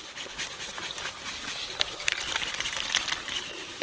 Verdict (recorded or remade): recorded